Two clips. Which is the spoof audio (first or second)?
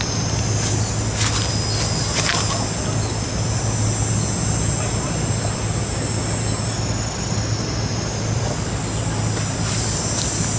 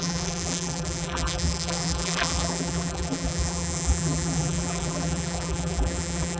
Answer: second